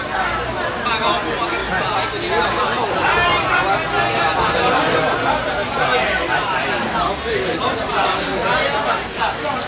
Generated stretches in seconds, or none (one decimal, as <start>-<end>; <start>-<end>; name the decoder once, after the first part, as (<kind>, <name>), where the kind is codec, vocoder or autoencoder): none

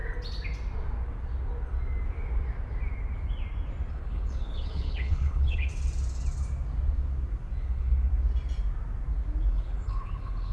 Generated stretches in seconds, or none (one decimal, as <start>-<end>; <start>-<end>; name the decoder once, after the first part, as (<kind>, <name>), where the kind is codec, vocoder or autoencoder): 3.9-5.7 (codec, HILCodec); 7.6-8.1; 9.5-10.5

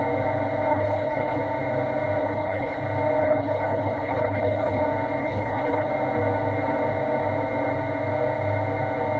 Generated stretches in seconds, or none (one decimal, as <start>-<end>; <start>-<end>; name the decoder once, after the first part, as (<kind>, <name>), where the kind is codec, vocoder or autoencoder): 0.7-1.4 (codec, HILCodec); 2.2-2.8; 3.2-4.8; 5.2-5.9

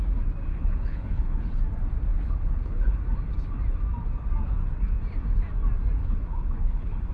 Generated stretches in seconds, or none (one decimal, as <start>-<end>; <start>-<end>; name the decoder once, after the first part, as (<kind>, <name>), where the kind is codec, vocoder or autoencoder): 0.5-1.6 (codec, HILCodec); 2.1-3.0; 6.0-7.1

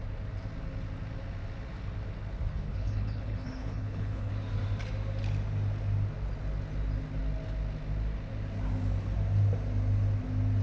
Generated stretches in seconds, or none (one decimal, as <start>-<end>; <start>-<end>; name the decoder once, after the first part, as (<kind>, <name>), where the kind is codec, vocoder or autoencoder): 2.5-4.3 (codec, HILCodec)